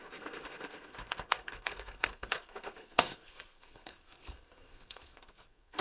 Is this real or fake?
fake